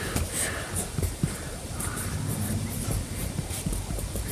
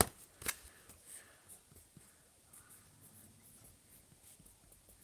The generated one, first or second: first